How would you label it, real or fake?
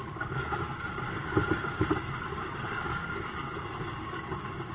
fake